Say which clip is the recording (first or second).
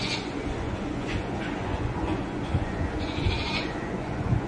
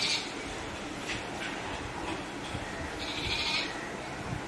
second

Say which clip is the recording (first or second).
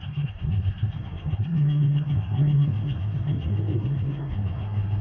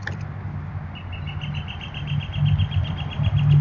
second